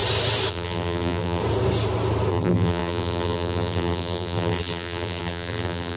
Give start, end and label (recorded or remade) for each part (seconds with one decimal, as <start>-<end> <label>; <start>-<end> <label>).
0.0-0.5 recorded; 0.5-1.4 remade; 1.4-2.3 recorded; 2.3-6.0 remade